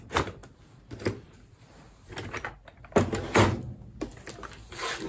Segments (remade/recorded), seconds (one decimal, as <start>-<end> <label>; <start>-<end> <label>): 0.0-5.1 recorded